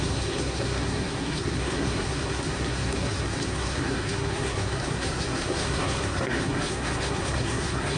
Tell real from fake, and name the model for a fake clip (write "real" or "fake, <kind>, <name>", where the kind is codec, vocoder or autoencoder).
fake, codec, SNAC